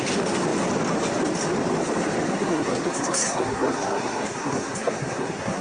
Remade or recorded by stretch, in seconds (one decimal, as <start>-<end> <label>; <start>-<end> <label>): 0.0-2.3 recorded; 2.3-5.6 remade